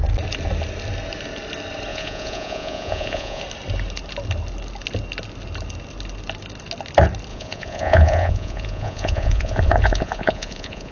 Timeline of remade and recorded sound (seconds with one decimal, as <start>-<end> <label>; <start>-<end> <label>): 0.0-1.9 recorded; 1.9-3.4 remade; 3.4-7.3 recorded; 7.3-10.9 remade